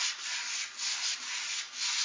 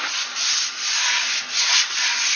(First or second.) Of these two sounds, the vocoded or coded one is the second